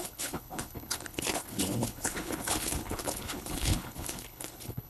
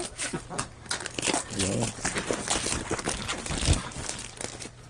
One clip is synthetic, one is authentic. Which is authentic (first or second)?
second